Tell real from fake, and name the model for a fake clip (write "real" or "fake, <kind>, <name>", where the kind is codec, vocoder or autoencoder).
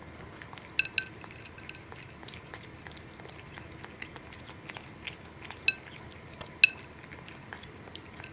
real